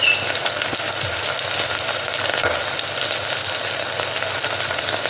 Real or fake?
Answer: real